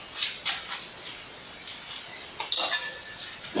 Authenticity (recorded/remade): recorded